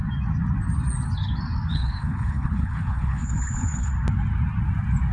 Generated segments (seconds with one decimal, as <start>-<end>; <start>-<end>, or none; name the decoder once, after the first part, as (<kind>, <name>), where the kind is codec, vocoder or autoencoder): 1.7-3.9 (codec, HILCodec)